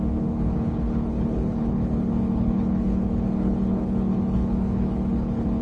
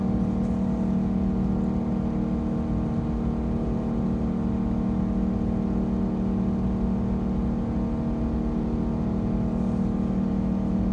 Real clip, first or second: second